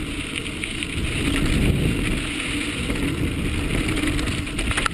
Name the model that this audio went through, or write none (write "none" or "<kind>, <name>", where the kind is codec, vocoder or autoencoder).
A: none